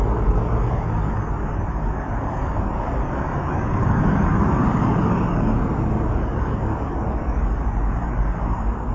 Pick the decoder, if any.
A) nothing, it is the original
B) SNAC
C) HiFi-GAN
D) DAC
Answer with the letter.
D